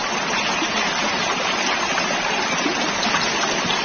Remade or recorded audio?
recorded